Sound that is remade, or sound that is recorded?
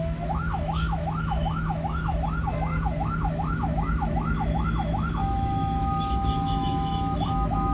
remade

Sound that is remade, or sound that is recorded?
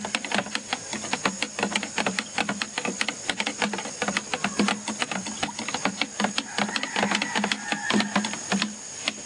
recorded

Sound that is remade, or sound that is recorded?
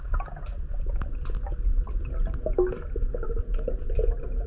recorded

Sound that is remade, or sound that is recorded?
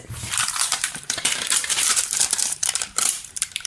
remade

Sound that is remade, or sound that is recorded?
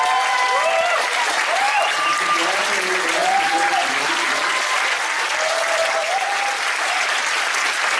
recorded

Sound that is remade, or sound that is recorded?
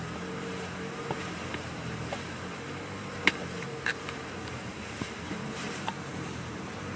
remade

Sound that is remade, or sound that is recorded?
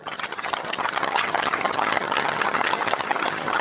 remade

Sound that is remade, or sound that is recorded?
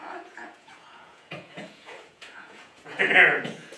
remade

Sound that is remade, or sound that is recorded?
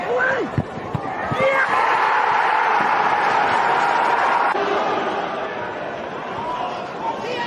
recorded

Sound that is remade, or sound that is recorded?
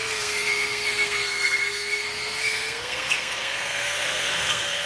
remade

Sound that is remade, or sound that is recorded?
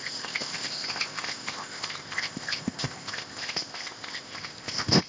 remade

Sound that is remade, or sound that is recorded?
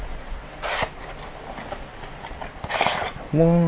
recorded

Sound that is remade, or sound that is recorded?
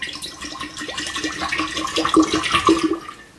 recorded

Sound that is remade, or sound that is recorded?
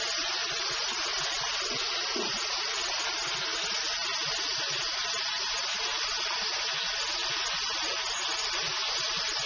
recorded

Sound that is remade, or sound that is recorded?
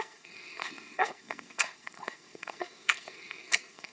remade